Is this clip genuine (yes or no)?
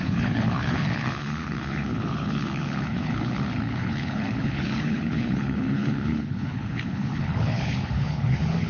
no